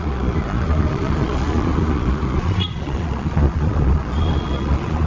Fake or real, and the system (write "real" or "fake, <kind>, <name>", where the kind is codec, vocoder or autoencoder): fake, vocoder, Vocos